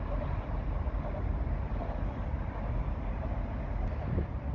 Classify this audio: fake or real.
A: real